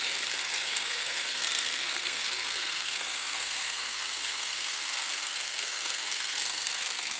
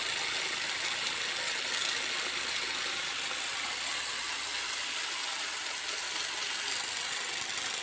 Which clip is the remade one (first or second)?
first